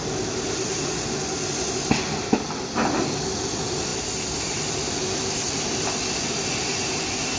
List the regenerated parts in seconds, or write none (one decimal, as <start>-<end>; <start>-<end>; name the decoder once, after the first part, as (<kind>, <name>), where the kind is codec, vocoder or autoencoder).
0.0-3.9 (vocoder, BigVGAN v2); 4.7-7.4